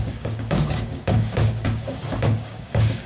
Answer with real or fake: fake